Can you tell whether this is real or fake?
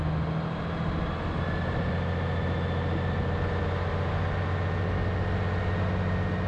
real